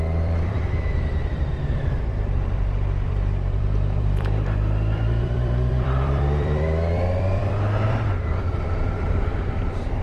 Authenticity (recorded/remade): remade